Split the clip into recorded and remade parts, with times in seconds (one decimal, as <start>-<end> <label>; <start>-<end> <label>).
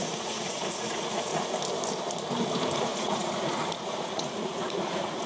0.0-1.3 remade; 1.3-2.8 recorded; 2.8-5.3 remade